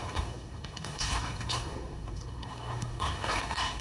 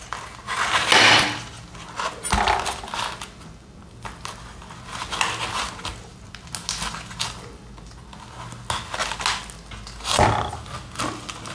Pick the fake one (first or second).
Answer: first